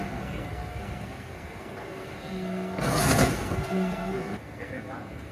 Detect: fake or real fake